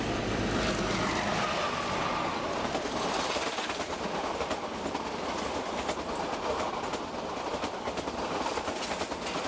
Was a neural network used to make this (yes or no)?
no